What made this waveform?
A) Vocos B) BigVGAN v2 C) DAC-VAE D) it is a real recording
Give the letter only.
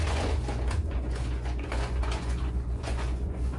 A